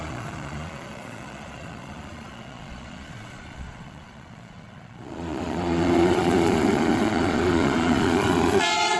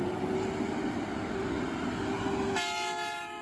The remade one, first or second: first